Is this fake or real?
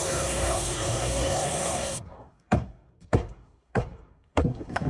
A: fake